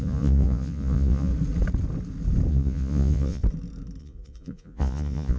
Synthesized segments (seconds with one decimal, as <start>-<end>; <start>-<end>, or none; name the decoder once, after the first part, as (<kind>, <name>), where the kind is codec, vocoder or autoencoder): 0.0-1.3 (vocoder, Vocos); 2.5-3.4; 4.0-5.4

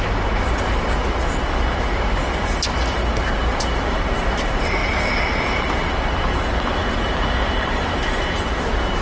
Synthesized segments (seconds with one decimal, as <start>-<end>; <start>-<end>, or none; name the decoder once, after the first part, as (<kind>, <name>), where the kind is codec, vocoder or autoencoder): none

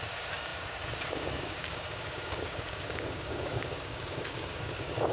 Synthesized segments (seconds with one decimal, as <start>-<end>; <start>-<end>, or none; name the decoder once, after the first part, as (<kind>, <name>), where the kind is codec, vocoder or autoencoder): 0.0-5.1 (codec, DAC)

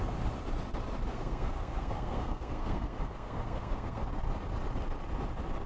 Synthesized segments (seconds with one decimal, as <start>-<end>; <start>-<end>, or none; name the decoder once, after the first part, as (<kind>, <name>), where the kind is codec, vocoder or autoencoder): 1.1-4.1 (codec, SNAC)

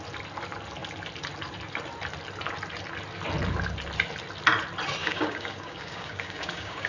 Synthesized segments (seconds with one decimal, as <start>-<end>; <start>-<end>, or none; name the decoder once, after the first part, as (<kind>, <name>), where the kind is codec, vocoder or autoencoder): 5.0-6.9 (codec, DAC)

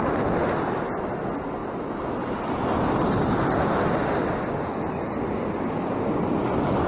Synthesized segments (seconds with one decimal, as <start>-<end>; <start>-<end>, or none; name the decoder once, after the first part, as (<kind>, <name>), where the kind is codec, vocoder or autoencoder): none

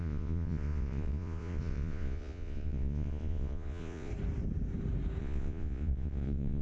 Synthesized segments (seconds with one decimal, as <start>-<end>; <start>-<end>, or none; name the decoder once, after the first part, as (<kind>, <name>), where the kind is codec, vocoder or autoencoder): 0.0-4.1 (vocoder, Vocos); 5.2-6.6

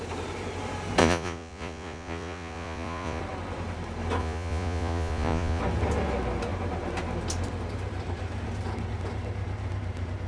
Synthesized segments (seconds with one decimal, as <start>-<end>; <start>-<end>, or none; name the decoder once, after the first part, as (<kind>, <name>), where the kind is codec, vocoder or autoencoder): 1.0-3.2 (vocoder, Vocos); 4.2-5.6